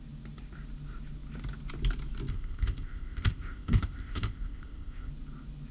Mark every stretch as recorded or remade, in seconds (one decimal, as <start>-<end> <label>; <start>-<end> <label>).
0.0-2.3 recorded; 2.3-5.1 remade; 5.1-5.7 recorded